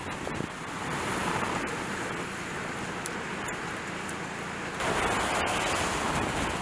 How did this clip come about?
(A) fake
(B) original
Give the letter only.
B